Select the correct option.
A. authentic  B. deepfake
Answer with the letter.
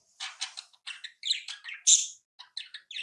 A